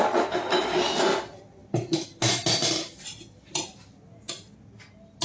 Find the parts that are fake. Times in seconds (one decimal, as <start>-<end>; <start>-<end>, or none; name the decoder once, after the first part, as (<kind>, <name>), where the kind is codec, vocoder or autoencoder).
none